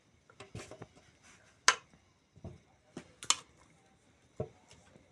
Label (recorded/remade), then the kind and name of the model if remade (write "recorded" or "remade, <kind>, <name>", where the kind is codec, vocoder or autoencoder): recorded